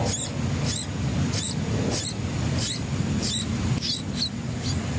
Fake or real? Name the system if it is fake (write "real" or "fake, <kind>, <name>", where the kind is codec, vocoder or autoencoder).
real